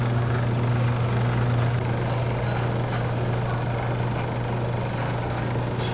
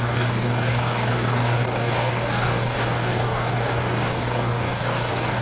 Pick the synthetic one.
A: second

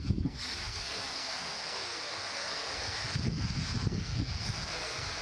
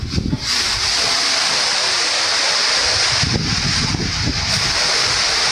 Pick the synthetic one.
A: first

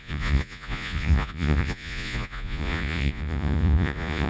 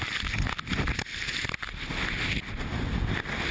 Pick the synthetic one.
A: first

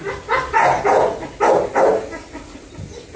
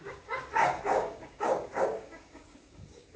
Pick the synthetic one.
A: second